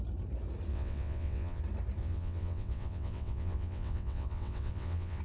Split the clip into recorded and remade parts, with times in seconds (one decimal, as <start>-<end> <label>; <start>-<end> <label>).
0.0-0.7 recorded; 0.7-1.6 remade; 1.6-2.0 recorded; 2.0-5.2 remade